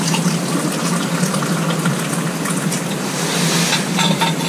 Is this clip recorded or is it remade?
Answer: recorded